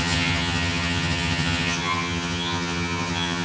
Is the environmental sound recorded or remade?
remade